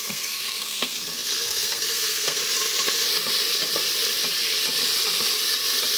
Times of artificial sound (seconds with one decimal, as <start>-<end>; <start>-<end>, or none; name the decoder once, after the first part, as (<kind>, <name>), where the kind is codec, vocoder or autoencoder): 0.0-2.4 (codec, SNAC)